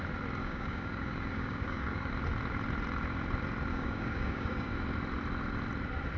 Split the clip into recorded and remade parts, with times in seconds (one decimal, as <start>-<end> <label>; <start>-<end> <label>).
0.0-0.4 recorded; 0.4-2.1 remade; 2.1-3.7 recorded; 3.7-4.7 remade; 4.7-6.2 recorded

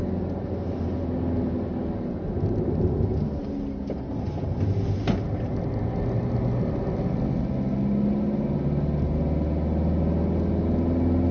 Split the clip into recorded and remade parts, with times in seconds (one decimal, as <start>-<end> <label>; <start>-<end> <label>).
0.0-11.3 recorded

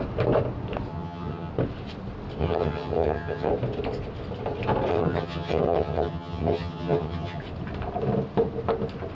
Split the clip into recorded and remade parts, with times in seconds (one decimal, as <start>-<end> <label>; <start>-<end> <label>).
0.0-0.9 recorded; 0.9-1.5 remade; 1.5-2.4 recorded; 2.4-3.5 remade; 3.5-4.9 recorded; 4.9-7.4 remade; 7.4-9.1 recorded

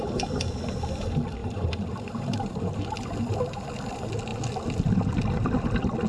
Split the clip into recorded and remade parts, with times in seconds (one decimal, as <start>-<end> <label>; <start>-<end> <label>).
0.0-1.4 recorded; 1.4-2.9 remade; 2.9-6.1 recorded